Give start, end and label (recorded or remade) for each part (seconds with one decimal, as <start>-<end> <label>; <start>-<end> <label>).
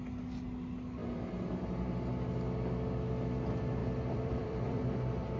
0.0-3.8 recorded; 3.8-4.8 remade; 4.8-5.4 recorded